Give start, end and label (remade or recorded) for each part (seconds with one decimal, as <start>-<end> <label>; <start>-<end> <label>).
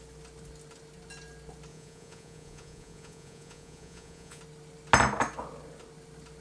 0.0-1.7 recorded; 1.7-4.4 remade; 4.4-6.4 recorded